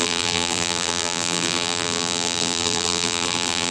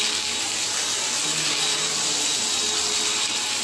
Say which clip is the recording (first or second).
second